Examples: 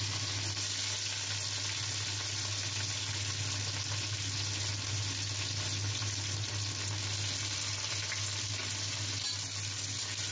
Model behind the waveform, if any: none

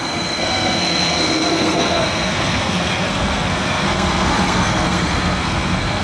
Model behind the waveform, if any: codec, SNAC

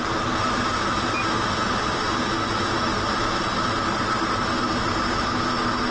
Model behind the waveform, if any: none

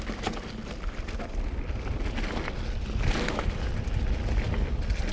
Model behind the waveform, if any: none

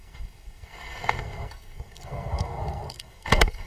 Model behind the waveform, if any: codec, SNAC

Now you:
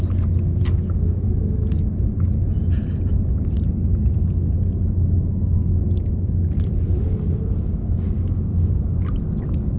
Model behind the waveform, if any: none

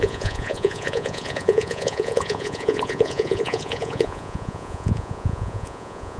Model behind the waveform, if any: vocoder, Vocos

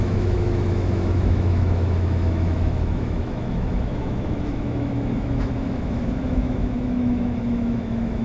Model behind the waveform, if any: autoencoder, DAC-VAE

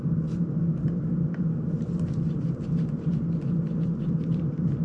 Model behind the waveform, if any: vocoder, BigVGAN v2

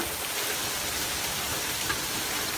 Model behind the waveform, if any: vocoder, BigVGAN v2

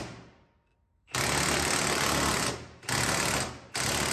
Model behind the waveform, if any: none